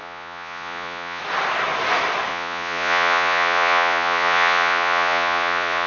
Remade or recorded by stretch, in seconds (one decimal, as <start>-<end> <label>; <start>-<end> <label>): 0.0-1.2 remade; 1.2-2.3 recorded; 2.3-5.9 remade